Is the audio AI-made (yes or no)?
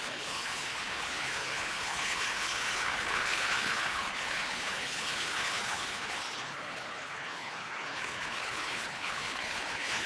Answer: yes